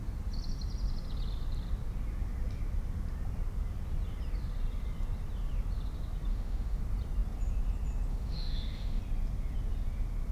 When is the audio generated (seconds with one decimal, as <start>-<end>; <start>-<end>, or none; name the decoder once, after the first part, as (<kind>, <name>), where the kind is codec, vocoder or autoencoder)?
6.3-6.8 (autoencoder, DAC-VAE); 8.1-9.0